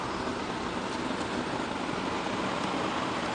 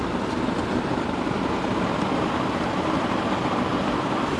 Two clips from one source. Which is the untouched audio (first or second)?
first